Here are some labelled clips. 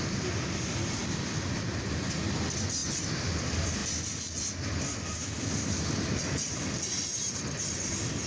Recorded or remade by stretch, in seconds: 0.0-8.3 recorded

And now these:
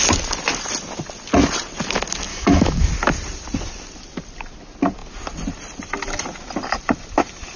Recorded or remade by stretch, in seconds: 0.0-2.3 recorded; 2.3-2.9 remade; 2.9-7.6 recorded

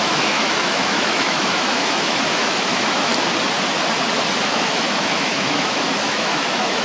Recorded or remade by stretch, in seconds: 0.0-3.1 remade; 3.1-4.4 recorded; 4.4-6.8 remade

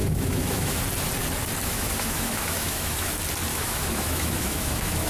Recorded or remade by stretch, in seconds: 0.0-0.8 remade; 0.8-1.6 recorded; 1.6-3.1 remade; 3.1-3.5 recorded; 3.5-5.1 remade

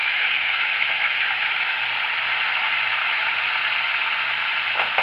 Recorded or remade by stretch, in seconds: 0.0-1.8 remade; 1.8-3.0 recorded; 3.0-3.5 remade; 3.5-5.0 recorded

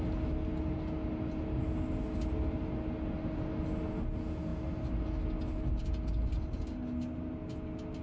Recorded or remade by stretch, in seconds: 0.0-8.0 recorded